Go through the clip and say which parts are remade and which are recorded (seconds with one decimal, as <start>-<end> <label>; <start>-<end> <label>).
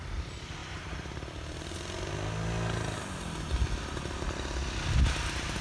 0.0-0.6 recorded; 0.6-2.1 remade; 2.1-5.6 recorded